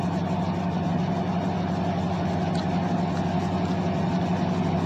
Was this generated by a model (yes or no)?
no